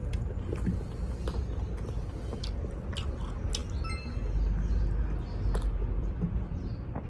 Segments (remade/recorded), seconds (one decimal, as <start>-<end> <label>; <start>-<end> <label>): 0.0-7.1 recorded